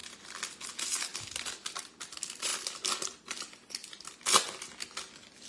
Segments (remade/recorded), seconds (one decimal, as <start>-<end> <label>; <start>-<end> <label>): 0.0-5.5 recorded